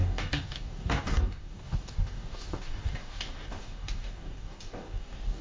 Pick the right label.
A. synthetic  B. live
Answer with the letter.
A